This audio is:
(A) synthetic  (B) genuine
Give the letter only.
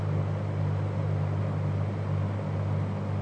B